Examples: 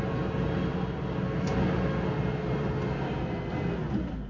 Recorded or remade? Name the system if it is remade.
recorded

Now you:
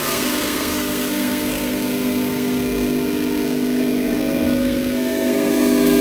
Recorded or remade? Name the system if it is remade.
remade, codec, SNAC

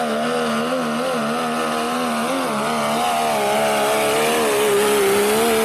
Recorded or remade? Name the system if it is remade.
recorded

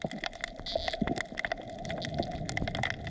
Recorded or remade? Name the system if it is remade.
recorded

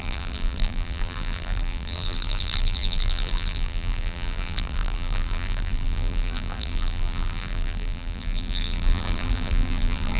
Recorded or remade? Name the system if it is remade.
remade, vocoder, BigVGAN v2